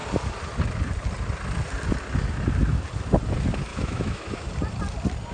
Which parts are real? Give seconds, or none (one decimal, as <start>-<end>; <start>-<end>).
0.0-3.7; 4.5-5.3